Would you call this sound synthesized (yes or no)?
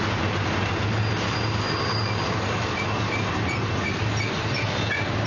no